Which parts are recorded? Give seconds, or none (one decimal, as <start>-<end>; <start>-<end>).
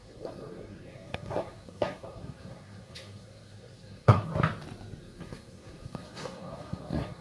4.3-5.0